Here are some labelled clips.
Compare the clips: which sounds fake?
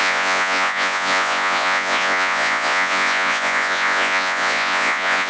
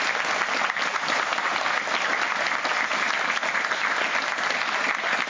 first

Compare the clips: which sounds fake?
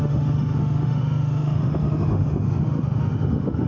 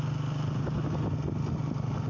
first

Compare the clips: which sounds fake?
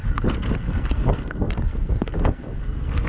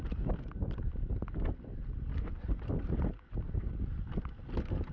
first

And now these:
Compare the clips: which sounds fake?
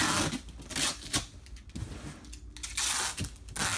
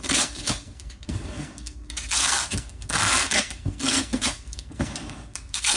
second